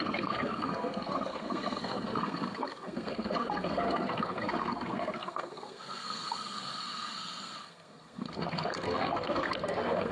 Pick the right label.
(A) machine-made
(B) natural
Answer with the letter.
A